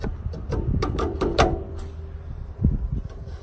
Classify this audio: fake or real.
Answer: real